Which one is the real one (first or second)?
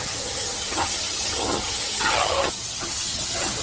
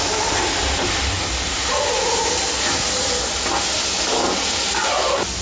second